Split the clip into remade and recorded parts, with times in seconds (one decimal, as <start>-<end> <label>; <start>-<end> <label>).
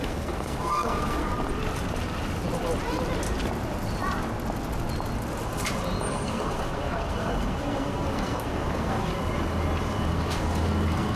0.0-1.3 remade; 1.3-6.1 recorded; 6.1-9.1 remade; 9.1-10.1 recorded; 10.1-11.2 remade